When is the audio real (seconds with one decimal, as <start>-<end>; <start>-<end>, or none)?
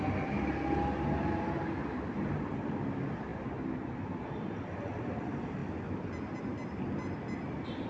0.0-7.9